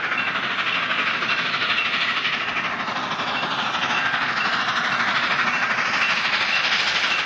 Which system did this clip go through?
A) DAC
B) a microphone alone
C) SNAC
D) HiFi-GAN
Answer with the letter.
B